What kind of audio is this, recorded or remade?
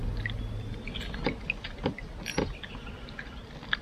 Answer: recorded